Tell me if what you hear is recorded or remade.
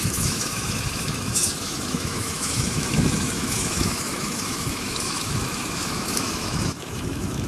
remade